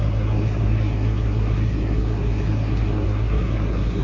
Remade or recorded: remade